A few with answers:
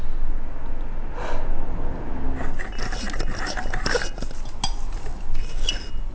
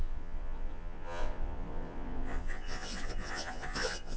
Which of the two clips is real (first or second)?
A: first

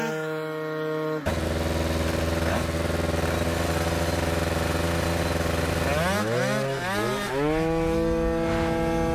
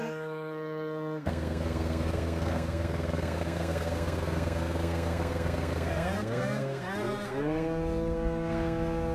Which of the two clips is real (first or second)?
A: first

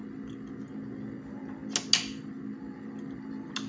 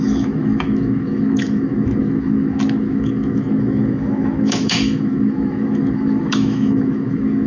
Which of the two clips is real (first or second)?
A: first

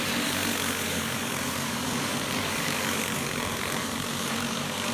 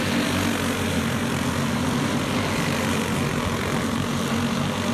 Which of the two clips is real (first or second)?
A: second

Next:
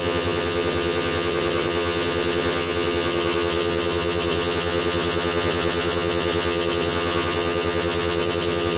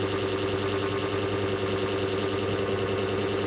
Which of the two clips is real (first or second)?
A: second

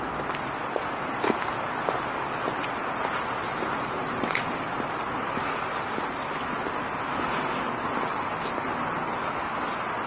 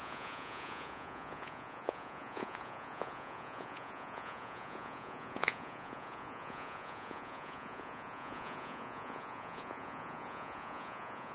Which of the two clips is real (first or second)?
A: first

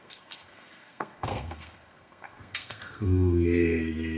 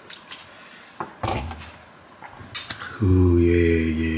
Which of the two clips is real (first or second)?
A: second